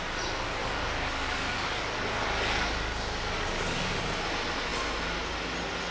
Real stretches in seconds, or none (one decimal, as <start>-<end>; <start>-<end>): 0.0-0.6; 4.0-5.9